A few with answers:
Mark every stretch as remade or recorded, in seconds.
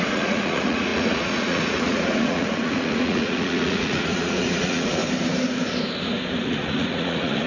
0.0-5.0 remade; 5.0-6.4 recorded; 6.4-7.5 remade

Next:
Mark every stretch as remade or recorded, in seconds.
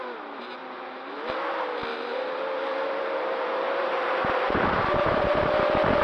0.0-0.6 recorded; 0.6-1.2 remade; 1.2-1.9 recorded; 1.9-5.5 remade; 5.5-6.0 recorded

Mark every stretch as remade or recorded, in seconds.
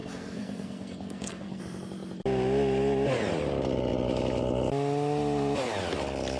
0.0-1.6 remade; 1.6-6.4 recorded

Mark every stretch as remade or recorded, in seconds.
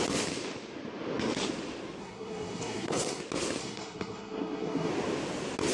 0.0-2.0 recorded; 2.0-3.2 remade; 3.2-3.6 recorded; 3.6-4.9 remade; 4.9-5.7 recorded